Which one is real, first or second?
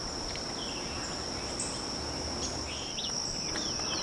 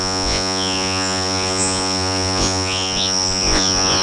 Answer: first